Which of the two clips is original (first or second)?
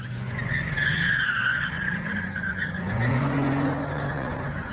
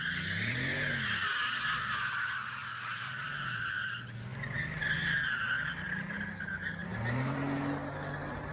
second